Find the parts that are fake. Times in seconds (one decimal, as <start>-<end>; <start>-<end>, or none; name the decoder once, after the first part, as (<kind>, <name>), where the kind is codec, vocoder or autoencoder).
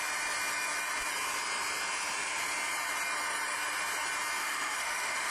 4.4-5.3 (autoencoder, DAC-VAE)